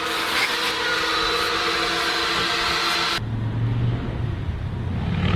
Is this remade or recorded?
recorded